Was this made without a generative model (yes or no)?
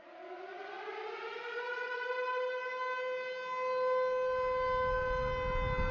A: yes